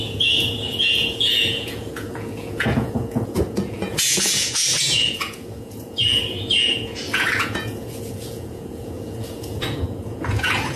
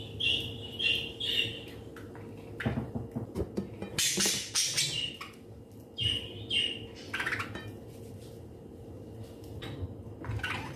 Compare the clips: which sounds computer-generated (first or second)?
first